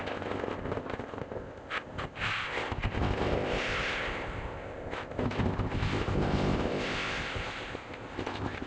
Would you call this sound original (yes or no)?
no